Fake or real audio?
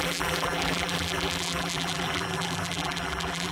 fake